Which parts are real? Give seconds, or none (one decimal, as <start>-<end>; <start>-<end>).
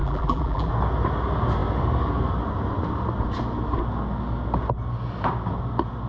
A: 0.7-6.1